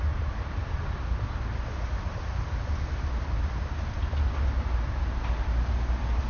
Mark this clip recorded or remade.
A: recorded